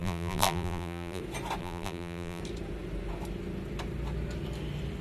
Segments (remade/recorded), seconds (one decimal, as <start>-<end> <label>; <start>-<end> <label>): 0.0-1.2 remade; 1.2-1.6 recorded; 1.6-2.4 remade; 2.4-5.0 recorded